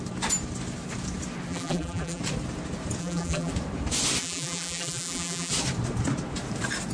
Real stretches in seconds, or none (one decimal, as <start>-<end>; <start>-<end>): 0.0-1.5; 2.2-3.0; 3.5-4.2; 5.5-6.9